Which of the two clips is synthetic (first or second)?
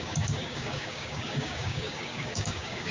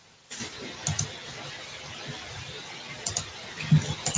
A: first